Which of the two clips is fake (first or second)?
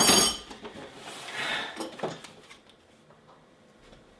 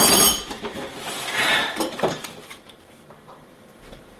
second